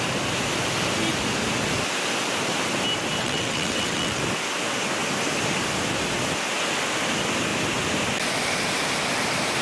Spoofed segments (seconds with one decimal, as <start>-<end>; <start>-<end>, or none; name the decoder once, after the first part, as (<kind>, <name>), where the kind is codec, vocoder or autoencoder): 3.2-4.2 (vocoder, WaveNeXt)